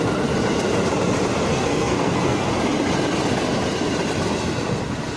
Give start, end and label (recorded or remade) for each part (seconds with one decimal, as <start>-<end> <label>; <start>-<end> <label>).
0.0-1.5 recorded; 1.5-2.5 remade; 2.5-5.2 recorded